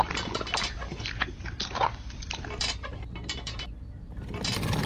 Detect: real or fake fake